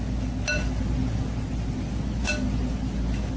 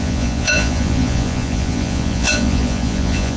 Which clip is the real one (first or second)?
first